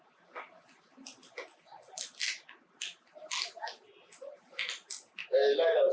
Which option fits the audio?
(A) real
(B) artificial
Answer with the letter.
A